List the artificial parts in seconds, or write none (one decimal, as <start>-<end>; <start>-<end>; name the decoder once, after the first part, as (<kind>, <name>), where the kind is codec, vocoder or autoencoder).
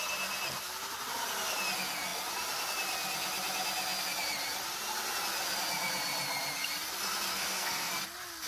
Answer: 7.3-7.9 (codec, SNAC)